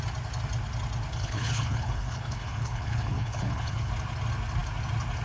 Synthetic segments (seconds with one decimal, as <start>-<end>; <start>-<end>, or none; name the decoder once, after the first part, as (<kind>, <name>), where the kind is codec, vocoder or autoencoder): 1.1-3.9 (codec, HILCodec)

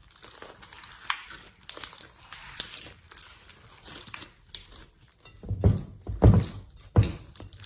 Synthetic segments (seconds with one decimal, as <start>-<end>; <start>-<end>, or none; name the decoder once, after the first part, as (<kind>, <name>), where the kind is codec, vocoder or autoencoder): none